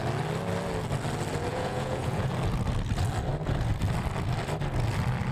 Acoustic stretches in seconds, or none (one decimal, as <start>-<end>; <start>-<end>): 0.0-1.5; 2.3-5.3